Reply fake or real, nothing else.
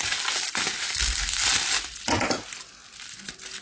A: real